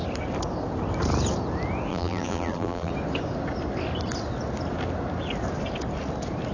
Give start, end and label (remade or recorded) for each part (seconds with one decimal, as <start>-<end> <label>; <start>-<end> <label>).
0.0-1.9 recorded; 1.9-2.9 remade; 2.9-6.5 recorded